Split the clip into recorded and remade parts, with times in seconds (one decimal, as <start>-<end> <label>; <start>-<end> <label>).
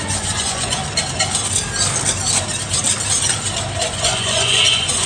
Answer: 0.0-0.8 remade; 0.8-3.9 recorded; 3.9-5.1 remade